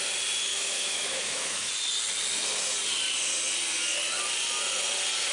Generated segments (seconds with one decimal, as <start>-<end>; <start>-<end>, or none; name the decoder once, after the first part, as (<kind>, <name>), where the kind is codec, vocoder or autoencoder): 0.5-1.7 (autoencoder, DAC-VAE)